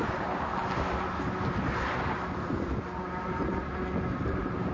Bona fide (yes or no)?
yes